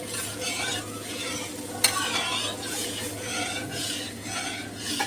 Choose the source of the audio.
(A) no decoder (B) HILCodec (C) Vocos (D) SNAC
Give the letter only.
C